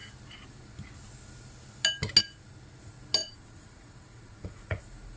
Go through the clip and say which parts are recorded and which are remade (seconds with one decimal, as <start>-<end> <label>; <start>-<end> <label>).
0.0-3.2 recorded; 3.2-4.8 remade; 4.8-5.2 recorded